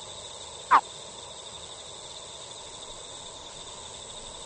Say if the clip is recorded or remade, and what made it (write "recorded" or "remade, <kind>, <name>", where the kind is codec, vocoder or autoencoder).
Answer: recorded